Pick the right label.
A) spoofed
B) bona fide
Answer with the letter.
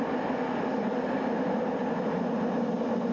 B